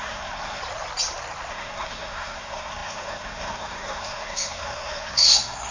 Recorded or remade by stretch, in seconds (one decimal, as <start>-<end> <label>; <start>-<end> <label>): 0.0-0.6 remade; 0.6-1.5 recorded; 1.5-5.7 remade